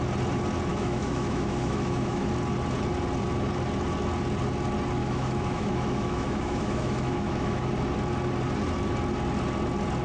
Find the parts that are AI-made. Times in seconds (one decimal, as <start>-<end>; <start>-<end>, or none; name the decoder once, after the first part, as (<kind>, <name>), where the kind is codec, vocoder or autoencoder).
0.7-2.3 (autoencoder, DAC-VAE); 5.0-7.7